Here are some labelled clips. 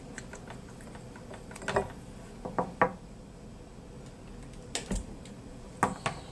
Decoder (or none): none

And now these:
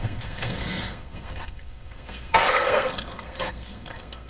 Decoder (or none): codec, SNAC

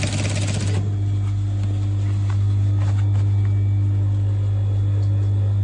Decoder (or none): none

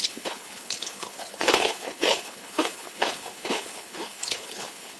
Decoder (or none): codec, HILCodec